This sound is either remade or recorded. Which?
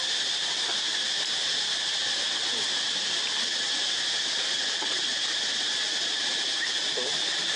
recorded